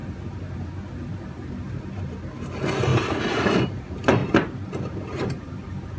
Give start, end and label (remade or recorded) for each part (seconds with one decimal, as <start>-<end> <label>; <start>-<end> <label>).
0.0-2.0 remade; 2.0-2.9 recorded; 2.9-3.5 remade; 3.5-4.2 recorded; 4.2-6.0 remade